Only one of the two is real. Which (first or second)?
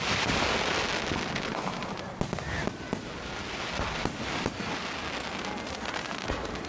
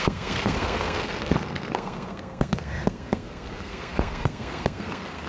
first